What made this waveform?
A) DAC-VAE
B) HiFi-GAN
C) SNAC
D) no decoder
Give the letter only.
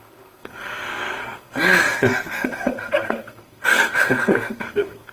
C